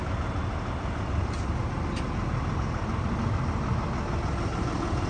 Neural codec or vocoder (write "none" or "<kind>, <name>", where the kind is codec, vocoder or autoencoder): none